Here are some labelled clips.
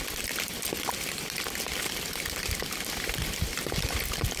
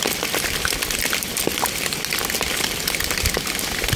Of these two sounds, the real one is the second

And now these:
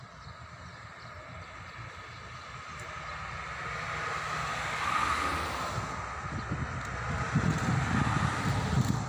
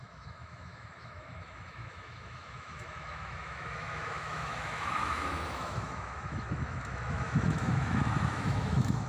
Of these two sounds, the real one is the first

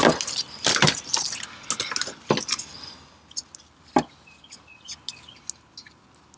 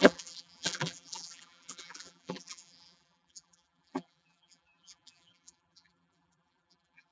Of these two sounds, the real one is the first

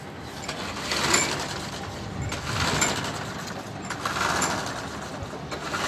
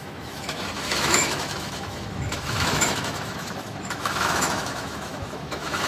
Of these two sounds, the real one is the first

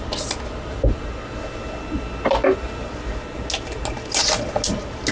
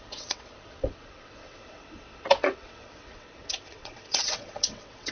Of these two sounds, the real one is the first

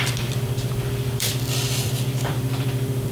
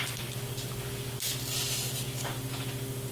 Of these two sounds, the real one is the second